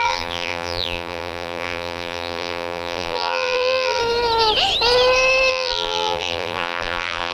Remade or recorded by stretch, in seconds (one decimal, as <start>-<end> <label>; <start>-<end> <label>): 0.0-4.0 remade; 4.0-5.5 recorded; 5.5-7.3 remade